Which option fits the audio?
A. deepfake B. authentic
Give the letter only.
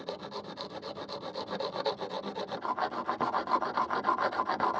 B